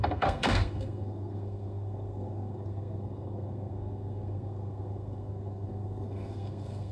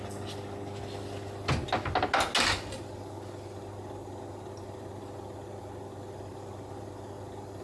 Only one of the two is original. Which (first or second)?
second